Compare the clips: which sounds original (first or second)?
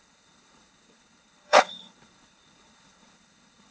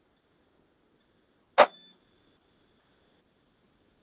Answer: second